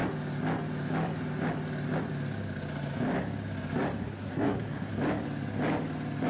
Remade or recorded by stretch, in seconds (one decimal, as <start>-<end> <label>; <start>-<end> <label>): 0.0-4.0 recorded; 4.0-4.9 remade; 4.9-6.3 recorded